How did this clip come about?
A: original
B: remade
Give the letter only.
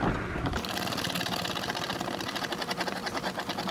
A